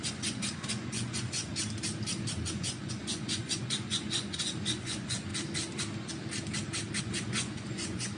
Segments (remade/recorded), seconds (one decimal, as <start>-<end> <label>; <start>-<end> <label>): 0.0-1.5 remade; 1.5-2.5 recorded; 2.5-5.3 remade; 5.3-7.0 recorded; 7.0-8.2 remade